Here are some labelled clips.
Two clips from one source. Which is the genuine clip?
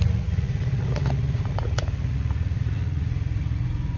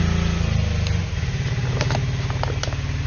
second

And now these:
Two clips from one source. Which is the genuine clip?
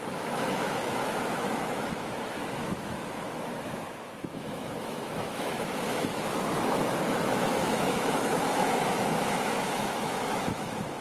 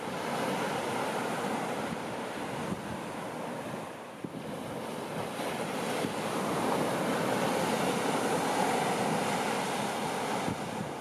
second